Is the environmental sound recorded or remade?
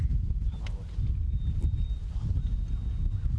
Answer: recorded